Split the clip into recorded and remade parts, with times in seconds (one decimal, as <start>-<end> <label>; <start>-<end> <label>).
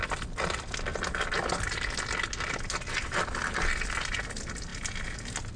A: 0.0-5.6 recorded